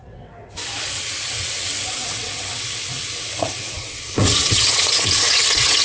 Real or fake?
fake